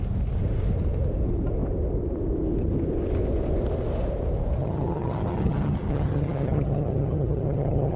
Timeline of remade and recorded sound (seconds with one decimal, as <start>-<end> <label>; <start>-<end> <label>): 0.0-4.6 recorded; 4.6-8.0 remade